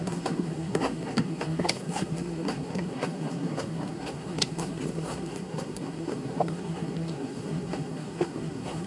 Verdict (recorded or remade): remade